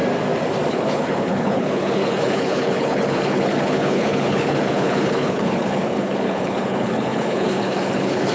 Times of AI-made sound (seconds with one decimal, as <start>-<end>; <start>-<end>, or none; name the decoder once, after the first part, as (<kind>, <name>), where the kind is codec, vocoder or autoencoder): 0.7-8.3 (codec, HILCodec)